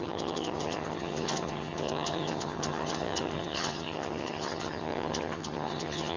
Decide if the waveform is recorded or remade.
remade